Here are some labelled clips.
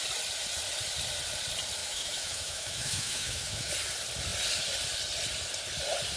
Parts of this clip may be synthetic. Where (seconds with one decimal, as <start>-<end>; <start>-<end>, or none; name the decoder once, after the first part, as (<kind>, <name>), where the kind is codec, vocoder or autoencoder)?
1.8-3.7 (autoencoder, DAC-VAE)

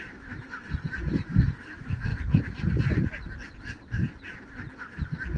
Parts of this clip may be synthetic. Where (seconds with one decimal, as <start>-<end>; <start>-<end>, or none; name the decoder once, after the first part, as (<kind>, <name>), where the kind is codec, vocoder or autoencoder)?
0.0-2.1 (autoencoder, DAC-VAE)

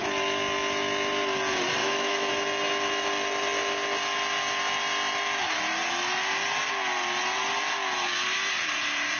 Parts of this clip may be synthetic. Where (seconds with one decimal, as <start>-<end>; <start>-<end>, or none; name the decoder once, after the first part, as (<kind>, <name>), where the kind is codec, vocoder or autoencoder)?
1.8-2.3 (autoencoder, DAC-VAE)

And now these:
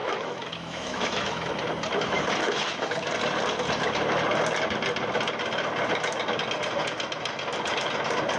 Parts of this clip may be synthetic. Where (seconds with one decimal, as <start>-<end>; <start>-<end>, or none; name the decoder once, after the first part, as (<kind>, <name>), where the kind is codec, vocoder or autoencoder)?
0.0-1.5 (autoencoder, DAC-VAE); 2.4-3.1

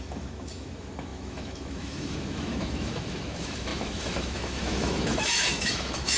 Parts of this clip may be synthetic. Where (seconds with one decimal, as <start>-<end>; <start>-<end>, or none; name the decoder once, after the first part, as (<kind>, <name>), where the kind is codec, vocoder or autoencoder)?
0.0-6.2 (autoencoder, DAC-VAE)

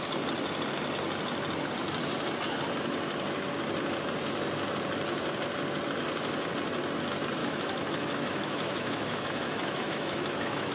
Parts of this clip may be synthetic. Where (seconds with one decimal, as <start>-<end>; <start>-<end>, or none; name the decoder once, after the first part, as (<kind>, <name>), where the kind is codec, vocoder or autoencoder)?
7.4-10.7 (autoencoder, DAC-VAE)

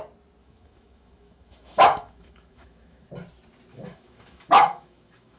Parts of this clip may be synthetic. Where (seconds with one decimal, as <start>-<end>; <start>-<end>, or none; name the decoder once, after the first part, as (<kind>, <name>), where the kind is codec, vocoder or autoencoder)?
0.4-3.1 (autoencoder, DAC-VAE); 3.7-5.4